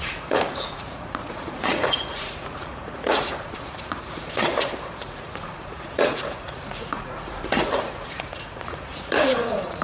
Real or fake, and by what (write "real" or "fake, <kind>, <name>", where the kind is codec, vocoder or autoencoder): fake, vocoder, Vocos